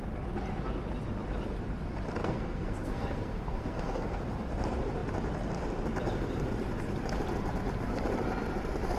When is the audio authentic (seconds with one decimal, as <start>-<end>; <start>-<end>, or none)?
0.0-2.2; 4.2-9.0